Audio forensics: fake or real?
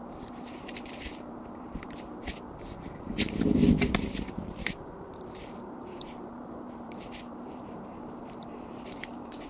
fake